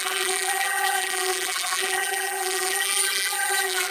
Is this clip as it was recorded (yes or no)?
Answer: no